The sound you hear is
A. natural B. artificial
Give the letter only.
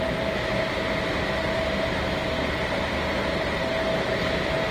A